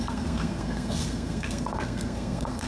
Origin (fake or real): fake